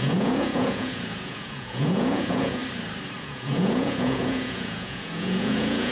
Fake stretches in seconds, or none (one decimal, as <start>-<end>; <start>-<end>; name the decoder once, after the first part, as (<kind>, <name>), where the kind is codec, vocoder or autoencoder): 0.0-2.6 (vocoder, Vocos); 3.2-5.9